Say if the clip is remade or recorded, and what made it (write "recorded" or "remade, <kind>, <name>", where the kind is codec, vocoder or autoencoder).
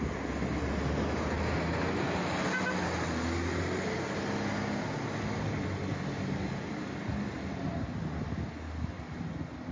recorded